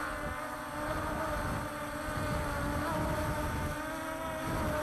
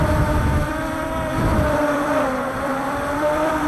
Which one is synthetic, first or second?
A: second